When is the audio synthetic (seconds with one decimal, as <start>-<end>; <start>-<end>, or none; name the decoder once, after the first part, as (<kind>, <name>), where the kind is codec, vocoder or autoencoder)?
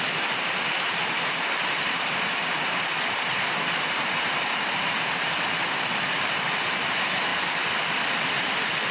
none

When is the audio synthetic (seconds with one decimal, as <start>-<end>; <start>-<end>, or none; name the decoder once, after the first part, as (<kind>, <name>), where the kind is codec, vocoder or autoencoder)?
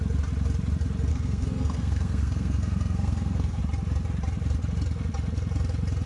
1.1-3.6 (codec, SNAC)